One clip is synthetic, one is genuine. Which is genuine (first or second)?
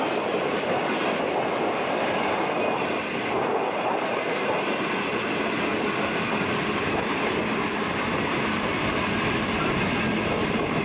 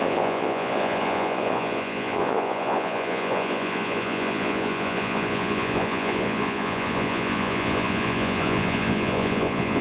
first